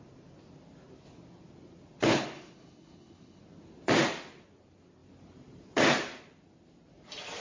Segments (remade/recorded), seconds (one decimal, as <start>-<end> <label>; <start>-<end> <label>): 0.0-2.1 recorded; 2.1-3.4 remade; 3.4-7.4 recorded